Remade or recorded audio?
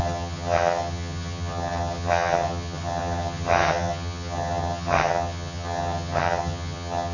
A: remade